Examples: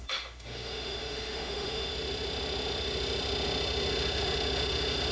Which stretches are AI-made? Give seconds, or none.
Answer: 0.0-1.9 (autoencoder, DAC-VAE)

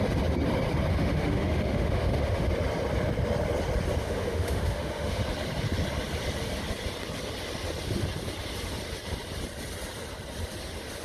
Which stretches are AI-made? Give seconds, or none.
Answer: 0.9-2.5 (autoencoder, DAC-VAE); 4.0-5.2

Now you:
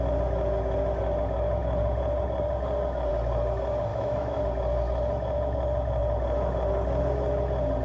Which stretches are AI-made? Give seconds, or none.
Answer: 3.9-4.4 (autoencoder, DAC-VAE)

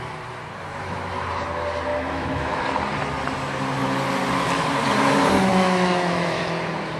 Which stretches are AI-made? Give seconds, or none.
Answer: 1.9-2.6 (autoencoder, DAC-VAE); 5.5-6.4